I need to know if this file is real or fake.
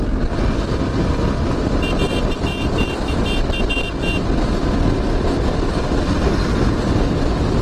real